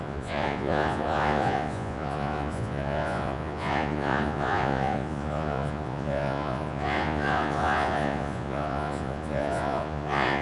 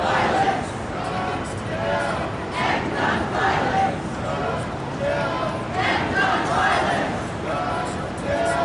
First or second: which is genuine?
second